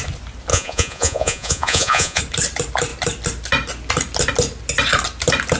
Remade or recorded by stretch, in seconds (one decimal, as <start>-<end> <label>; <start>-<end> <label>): 0.0-0.5 recorded; 0.5-2.2 remade; 2.2-5.6 recorded